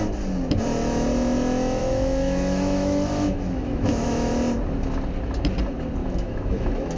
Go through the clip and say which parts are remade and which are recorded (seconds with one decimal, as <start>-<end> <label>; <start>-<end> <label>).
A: 0.0-1.8 recorded; 1.8-4.3 remade; 4.3-6.0 recorded; 6.0-7.0 remade